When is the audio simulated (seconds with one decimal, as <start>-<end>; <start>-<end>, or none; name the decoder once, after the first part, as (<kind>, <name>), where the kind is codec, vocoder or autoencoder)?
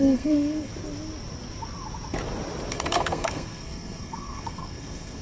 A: 0.0-0.7 (codec, SNAC); 2.7-5.2